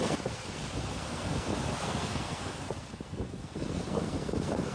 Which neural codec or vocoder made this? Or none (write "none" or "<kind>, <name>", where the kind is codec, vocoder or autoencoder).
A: codec, SNAC